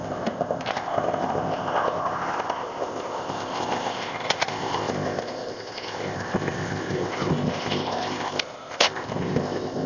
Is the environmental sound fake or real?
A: fake